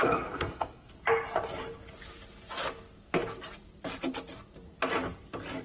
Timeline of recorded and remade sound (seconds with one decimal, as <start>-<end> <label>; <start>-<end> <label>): 0.0-0.9 remade; 0.9-5.6 recorded